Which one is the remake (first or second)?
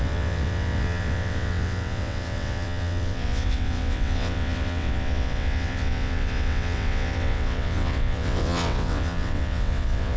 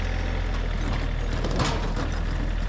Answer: first